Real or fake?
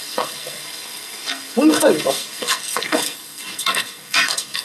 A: fake